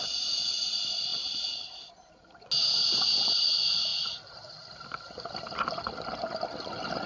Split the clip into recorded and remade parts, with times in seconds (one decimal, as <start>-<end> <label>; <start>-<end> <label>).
0.0-7.1 recorded